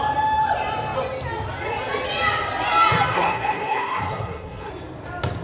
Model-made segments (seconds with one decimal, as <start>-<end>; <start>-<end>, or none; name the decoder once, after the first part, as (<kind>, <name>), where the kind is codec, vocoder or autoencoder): 3.1-4.7 (codec, SNAC)